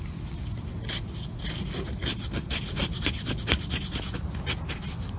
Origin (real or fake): real